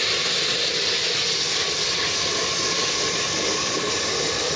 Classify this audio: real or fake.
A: real